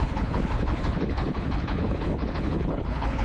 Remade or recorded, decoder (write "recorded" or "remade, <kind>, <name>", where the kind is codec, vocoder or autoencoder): remade, codec, HILCodec